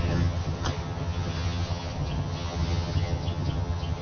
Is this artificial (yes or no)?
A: yes